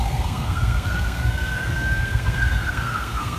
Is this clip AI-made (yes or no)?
yes